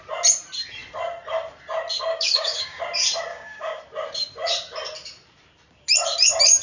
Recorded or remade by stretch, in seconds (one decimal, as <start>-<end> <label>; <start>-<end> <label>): 0.0-2.1 recorded; 2.1-2.8 remade; 2.8-3.3 recorded; 3.3-3.8 remade; 3.8-6.6 recorded